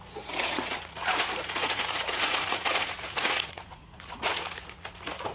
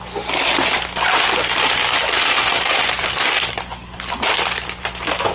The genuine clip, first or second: second